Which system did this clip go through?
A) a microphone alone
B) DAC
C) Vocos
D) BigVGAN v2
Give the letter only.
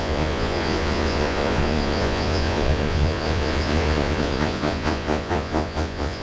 C